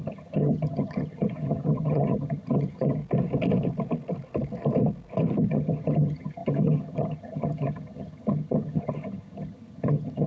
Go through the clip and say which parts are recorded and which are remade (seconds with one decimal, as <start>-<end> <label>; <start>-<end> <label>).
0.0-3.0 remade; 3.0-5.5 recorded; 5.5-10.3 remade